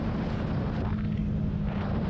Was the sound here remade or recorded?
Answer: recorded